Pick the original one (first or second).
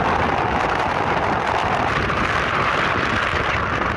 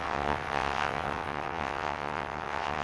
first